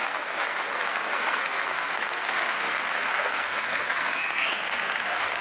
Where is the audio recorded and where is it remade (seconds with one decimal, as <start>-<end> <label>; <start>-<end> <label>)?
0.0-5.4 remade